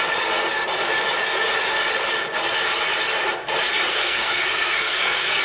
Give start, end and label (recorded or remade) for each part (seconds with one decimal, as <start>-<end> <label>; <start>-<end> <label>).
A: 0.0-3.9 recorded; 3.9-5.4 remade